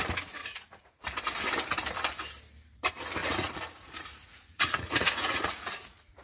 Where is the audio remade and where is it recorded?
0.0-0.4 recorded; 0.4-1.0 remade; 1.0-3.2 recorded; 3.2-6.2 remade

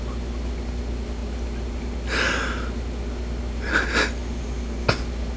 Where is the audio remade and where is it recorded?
0.0-5.4 recorded

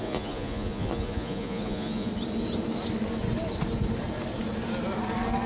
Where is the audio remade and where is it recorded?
0.0-2.1 remade; 2.1-5.5 recorded

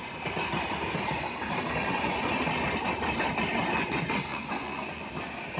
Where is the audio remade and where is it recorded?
0.0-1.8 recorded; 1.8-2.3 remade; 2.3-4.3 recorded; 4.3-5.1 remade; 5.1-5.6 recorded

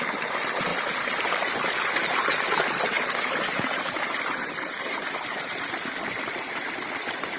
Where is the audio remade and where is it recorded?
0.0-7.4 recorded

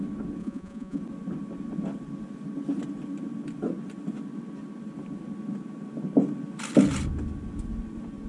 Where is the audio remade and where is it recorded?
0.0-0.4 recorded; 0.4-1.0 remade; 1.0-8.3 recorded